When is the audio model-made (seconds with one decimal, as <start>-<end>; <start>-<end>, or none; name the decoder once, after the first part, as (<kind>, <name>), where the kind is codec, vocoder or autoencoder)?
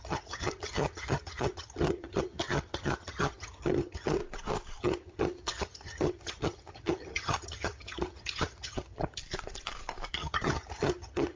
0.0-4.2 (vocoder, HiFi-GAN); 4.8-9.2; 10.1-11.4